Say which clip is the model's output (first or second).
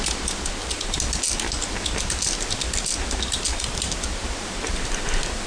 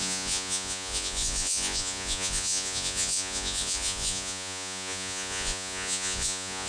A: second